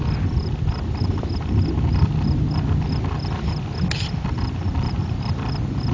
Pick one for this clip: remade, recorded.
recorded